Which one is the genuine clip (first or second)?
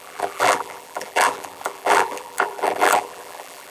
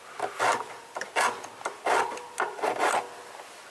second